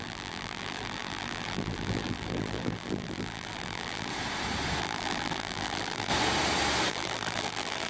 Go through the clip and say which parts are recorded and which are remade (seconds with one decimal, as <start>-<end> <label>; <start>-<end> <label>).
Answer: 0.0-4.1 remade; 4.1-4.8 recorded; 4.8-6.1 remade; 6.1-6.9 recorded; 6.9-7.9 remade